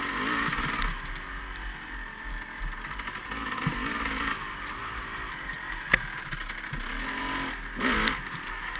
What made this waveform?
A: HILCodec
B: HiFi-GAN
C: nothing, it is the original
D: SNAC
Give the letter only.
C